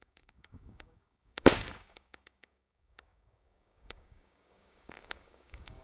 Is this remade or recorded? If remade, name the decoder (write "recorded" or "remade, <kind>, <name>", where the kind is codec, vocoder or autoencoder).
remade, codec, DAC